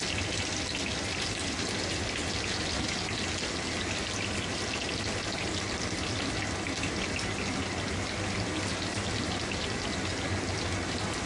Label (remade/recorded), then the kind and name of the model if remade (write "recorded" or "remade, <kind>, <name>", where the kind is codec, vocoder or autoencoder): recorded